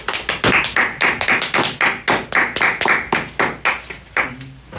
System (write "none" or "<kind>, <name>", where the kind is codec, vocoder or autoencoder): none